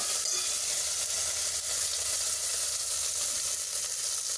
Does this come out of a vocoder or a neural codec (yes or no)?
no